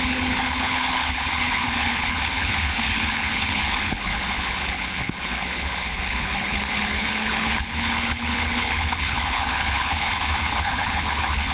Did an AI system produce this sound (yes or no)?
yes